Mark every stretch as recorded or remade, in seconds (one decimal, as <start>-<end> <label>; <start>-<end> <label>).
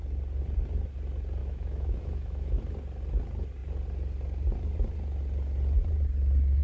0.0-1.4 recorded; 1.4-2.6 remade; 2.6-6.6 recorded